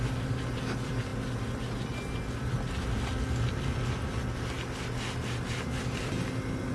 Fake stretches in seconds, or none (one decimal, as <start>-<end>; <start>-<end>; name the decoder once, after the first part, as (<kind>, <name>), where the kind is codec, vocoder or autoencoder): none